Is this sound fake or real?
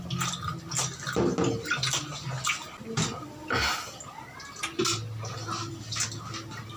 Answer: real